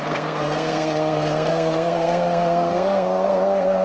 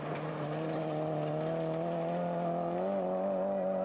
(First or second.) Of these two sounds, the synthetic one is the first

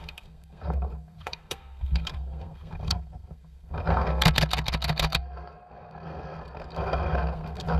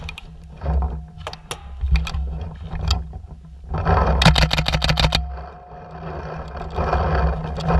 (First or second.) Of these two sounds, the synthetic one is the first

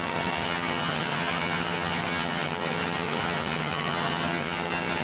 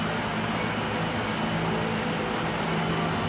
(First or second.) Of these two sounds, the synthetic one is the first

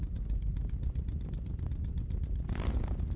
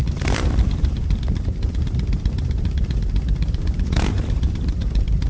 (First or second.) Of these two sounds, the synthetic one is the second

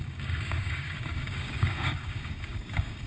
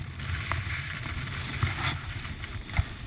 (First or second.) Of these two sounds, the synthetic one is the first